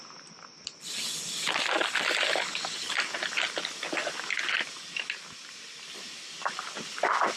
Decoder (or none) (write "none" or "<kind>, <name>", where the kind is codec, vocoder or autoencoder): none